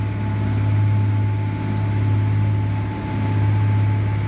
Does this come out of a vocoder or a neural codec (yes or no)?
no